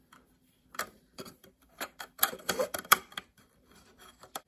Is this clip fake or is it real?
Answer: fake